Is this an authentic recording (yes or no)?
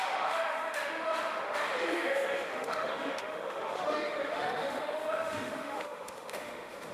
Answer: no